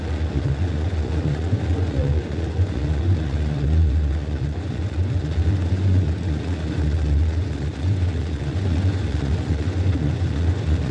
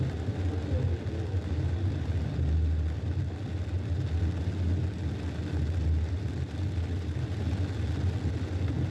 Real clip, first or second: second